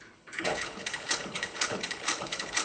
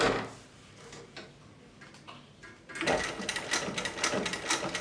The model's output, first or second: first